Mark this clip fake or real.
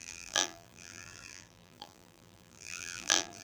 fake